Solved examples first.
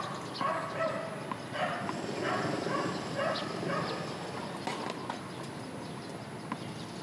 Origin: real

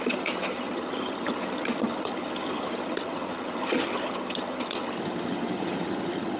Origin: fake